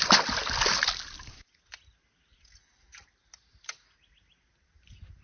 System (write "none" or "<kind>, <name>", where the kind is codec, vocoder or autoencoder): none